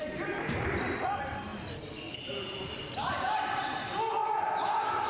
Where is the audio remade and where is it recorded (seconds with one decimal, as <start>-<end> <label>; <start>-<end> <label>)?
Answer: 0.0-0.7 remade; 0.7-3.0 recorded; 3.0-3.8 remade; 3.8-5.1 recorded